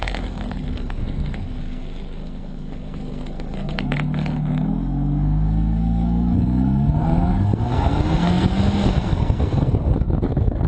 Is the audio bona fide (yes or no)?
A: no